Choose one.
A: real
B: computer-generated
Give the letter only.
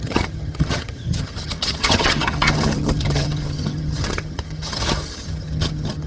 B